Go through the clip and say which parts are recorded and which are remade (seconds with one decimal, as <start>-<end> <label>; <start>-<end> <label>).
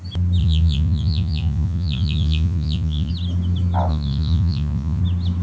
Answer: 0.0-0.4 recorded; 0.4-3.1 remade; 3.1-3.9 recorded; 3.9-5.0 remade; 5.0-5.4 recorded